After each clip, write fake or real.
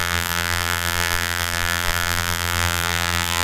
fake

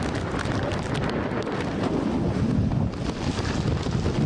real